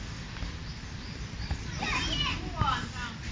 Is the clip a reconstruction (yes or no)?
no